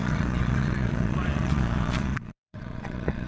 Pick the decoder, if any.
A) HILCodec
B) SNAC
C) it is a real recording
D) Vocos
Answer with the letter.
D